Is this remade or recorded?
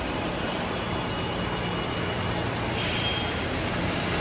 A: recorded